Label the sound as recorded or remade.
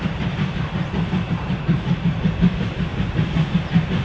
recorded